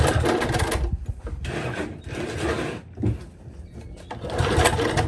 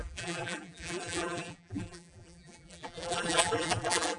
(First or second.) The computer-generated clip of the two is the second